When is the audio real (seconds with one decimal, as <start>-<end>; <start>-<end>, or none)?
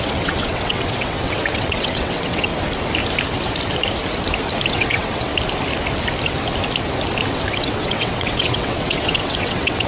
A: 2.5-4.7; 5.3-7.3